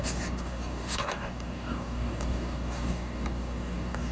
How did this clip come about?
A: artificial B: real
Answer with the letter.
A